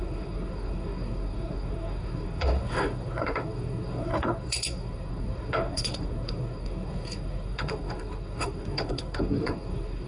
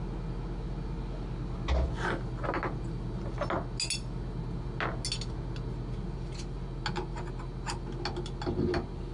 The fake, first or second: first